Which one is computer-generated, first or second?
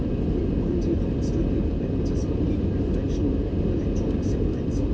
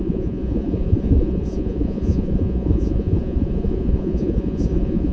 second